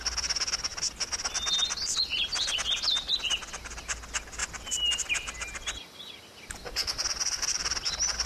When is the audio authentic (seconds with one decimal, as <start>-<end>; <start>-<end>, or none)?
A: 0.0-4.4; 5.1-8.3